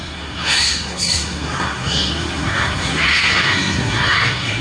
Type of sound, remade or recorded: remade